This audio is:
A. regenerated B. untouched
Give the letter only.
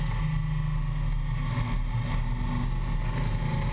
B